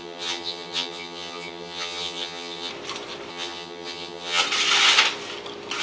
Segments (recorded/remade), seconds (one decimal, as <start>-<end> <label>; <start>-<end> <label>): 0.0-2.7 remade; 2.7-3.3 recorded; 3.3-4.4 remade; 4.4-5.8 recorded